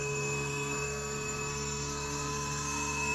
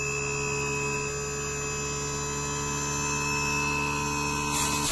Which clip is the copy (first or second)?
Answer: first